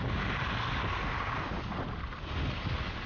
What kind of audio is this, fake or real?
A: real